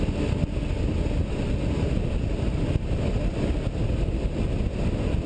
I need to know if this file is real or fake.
real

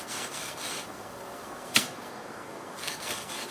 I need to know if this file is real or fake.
fake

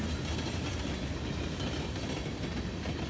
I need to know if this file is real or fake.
real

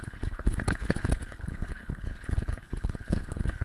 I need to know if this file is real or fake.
fake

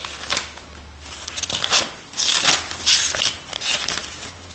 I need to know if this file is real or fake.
real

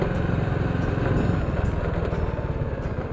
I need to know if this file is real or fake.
real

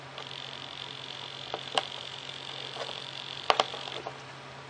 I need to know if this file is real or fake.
real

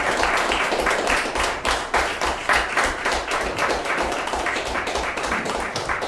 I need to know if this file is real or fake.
fake